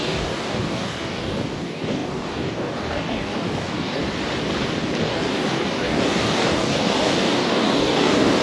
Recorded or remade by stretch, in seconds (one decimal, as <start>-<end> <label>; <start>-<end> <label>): 0.0-4.0 remade; 4.0-5.0 recorded; 5.0-8.4 remade